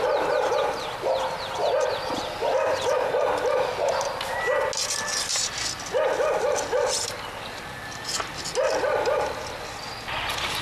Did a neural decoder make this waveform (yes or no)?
no